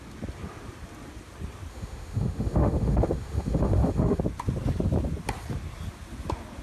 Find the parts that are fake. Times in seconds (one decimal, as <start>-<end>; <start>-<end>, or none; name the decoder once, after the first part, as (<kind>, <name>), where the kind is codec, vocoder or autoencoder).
1.7-4.2 (autoencoder, DAC-VAE)